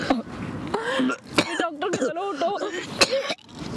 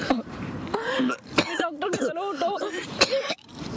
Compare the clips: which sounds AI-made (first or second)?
second